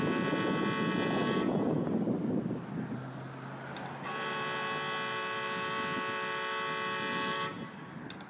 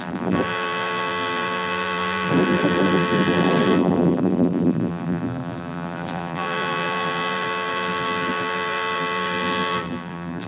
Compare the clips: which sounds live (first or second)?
first